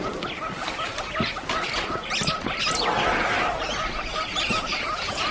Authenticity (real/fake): real